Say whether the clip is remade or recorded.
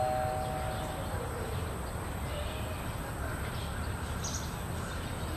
recorded